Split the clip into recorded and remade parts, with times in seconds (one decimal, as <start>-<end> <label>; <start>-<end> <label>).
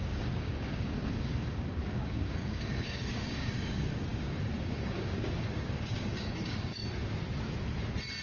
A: 0.0-6.8 remade; 6.8-8.2 recorded